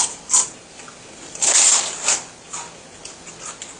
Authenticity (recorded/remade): recorded